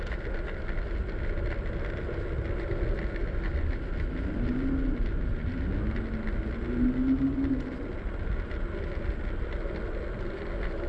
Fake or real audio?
real